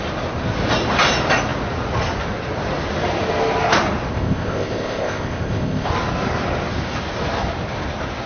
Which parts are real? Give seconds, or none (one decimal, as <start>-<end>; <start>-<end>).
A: 0.0-4.1; 5.9-8.3